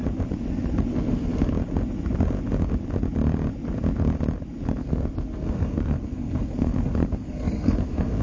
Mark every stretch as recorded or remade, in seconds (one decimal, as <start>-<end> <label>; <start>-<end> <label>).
0.0-0.9 recorded; 0.9-1.5 remade; 1.5-4.8 recorded; 4.8-8.2 remade